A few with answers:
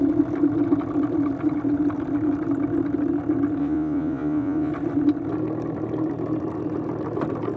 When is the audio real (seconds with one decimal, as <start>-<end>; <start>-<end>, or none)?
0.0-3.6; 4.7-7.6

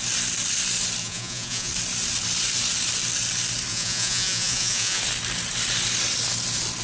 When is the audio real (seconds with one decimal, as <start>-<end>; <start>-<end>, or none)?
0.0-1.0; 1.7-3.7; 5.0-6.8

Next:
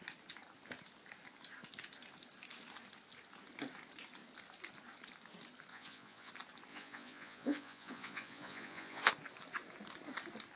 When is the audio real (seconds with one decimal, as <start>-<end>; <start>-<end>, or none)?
0.0-5.7; 6.3-6.7; 9.1-10.6